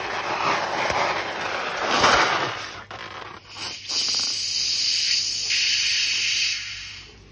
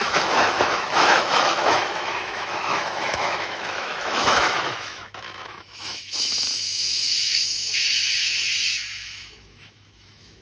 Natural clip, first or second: first